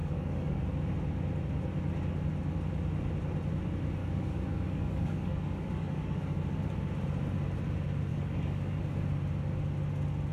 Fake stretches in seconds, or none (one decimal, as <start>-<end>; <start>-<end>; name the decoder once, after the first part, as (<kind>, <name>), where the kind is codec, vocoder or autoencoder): 0.0-0.6 (codec, DAC); 4.0-6.4; 8.1-8.8